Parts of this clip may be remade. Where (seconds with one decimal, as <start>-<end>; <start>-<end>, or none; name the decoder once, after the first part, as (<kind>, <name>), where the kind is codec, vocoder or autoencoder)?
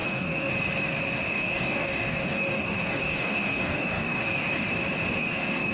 0.0-0.5 (codec, DAC); 1.3-4.7; 5.2-5.7